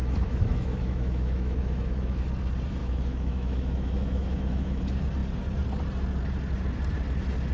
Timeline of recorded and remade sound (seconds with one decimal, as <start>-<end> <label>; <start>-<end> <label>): 0.0-2.2 remade; 2.2-2.8 recorded; 2.8-4.8 remade; 4.8-7.5 recorded